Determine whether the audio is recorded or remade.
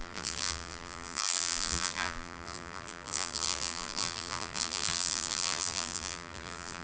remade